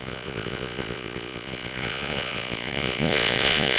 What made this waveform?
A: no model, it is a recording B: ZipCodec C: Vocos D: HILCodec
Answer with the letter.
C